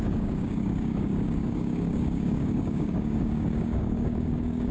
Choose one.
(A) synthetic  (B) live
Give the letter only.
A